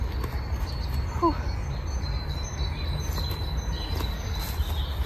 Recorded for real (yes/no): yes